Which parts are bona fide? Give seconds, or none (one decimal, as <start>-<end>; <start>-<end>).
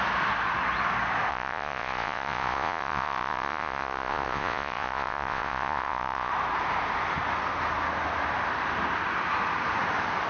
0.0-1.3; 6.3-10.3